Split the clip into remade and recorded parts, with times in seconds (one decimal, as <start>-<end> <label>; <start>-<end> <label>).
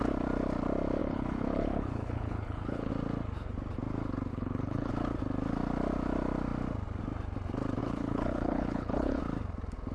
0.0-1.0 recorded; 1.0-2.9 remade; 2.9-4.3 recorded; 4.3-4.9 remade; 4.9-7.8 recorded; 7.8-9.2 remade; 9.2-9.9 recorded